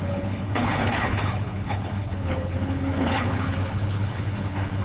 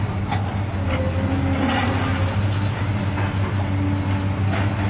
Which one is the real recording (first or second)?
second